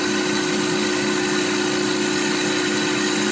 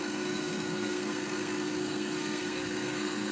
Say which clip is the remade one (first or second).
second